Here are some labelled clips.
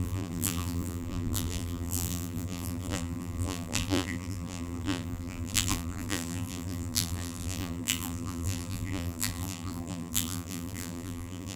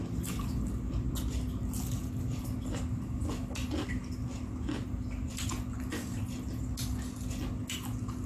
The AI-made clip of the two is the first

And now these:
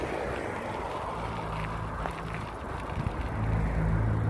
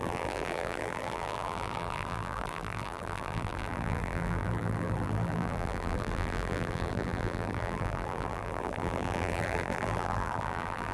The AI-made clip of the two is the second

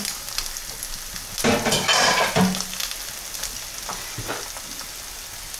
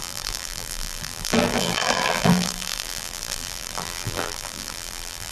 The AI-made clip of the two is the second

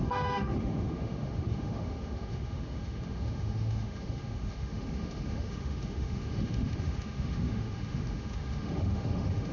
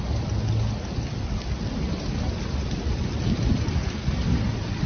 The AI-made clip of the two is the first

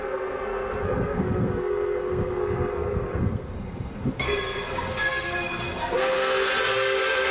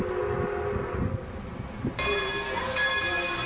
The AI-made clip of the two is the first